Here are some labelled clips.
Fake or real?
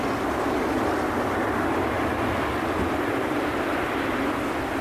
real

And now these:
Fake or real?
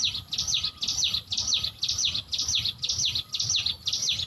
real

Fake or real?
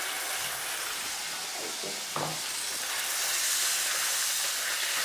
real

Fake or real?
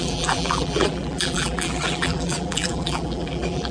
fake